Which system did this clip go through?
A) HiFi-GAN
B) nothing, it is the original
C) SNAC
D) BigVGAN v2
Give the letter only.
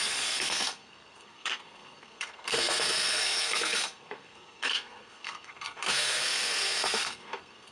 C